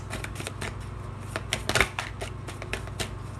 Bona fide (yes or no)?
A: yes